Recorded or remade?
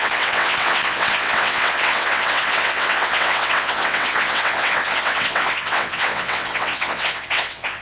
remade